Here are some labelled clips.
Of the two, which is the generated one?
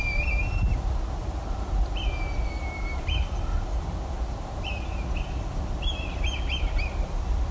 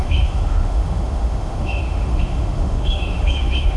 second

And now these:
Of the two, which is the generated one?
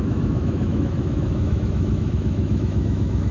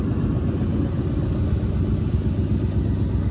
first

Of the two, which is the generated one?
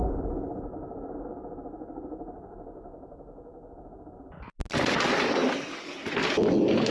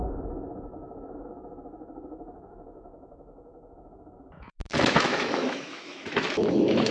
second